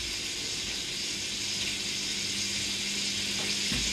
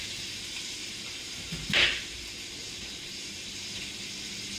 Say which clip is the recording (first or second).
first